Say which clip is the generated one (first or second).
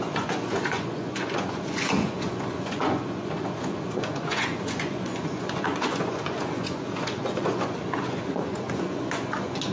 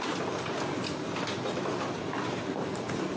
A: first